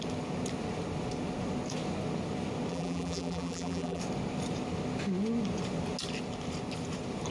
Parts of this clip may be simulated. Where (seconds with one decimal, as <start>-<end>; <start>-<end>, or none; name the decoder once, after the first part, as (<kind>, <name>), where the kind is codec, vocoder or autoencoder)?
2.7-4.0 (vocoder, BigVGAN v2)

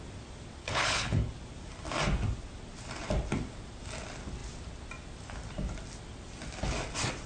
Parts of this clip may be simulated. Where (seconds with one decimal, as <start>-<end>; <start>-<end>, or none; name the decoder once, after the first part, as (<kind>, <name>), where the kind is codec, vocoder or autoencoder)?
0.6-1.3 (codec, HILCodec)

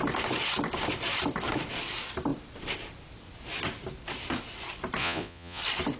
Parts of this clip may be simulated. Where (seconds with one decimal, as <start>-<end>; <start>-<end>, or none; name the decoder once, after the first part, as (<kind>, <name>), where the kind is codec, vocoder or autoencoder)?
5.0-5.6 (vocoder, Vocos)